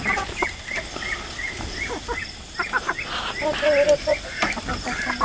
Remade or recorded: recorded